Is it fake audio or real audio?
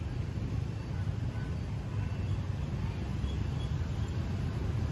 real